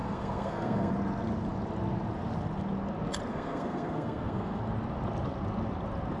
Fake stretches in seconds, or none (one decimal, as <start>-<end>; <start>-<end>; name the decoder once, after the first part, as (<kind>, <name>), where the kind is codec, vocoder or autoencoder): 0.0-0.9 (codec, SNAC); 3.3-4.6